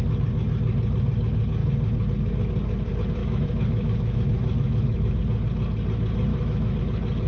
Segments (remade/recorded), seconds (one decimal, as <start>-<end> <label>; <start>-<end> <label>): 0.0-3.2 recorded; 3.2-5.2 remade; 5.2-6.3 recorded; 6.3-6.8 remade; 6.8-7.3 recorded